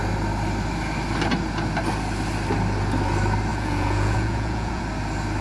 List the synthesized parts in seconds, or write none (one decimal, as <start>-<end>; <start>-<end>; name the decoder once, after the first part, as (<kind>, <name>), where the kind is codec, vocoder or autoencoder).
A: 3.5-4.8 (vocoder, Vocos)